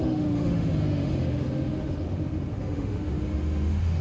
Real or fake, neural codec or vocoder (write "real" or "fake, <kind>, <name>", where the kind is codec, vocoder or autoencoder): fake, autoencoder, DAC-VAE